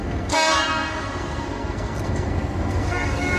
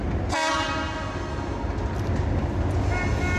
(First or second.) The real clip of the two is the second